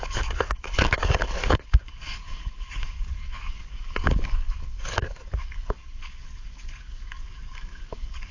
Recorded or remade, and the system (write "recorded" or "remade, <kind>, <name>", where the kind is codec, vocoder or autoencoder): remade, codec, DAC